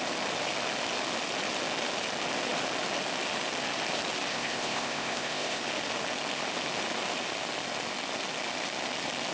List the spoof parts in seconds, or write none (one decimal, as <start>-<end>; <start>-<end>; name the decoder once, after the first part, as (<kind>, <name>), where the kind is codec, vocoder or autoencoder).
4.3-5.6 (codec, ZipCodec)